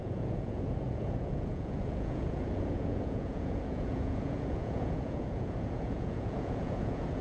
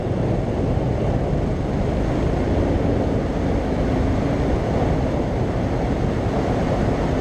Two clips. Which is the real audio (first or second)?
second